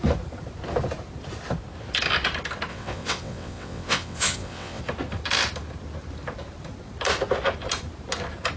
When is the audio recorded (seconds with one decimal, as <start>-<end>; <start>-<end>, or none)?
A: 0.0-2.7; 4.8-8.6